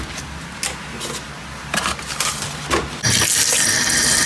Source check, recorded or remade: recorded